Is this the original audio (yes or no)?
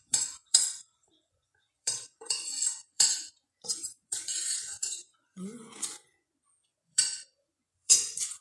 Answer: no